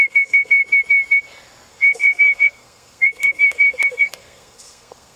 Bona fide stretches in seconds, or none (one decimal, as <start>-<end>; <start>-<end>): 0.6-1.7